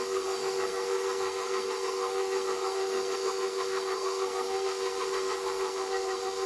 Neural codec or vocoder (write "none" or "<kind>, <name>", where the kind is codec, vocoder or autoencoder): codec, SNAC